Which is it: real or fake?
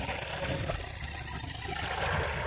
real